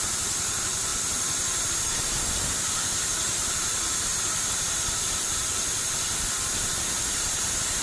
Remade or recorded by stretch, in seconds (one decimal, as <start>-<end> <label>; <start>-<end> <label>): 0.0-7.8 remade